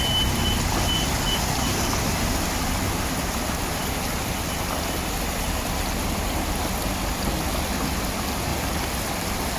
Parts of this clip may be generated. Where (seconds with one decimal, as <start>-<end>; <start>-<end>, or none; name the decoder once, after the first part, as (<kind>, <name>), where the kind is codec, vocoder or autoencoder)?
8.5-9.6 (vocoder, BigVGAN v2)

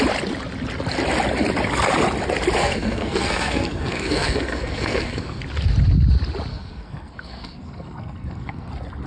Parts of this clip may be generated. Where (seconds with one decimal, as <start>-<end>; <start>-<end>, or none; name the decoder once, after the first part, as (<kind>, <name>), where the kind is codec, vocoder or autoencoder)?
2.6-5.4 (codec, SNAC); 6.5-8.7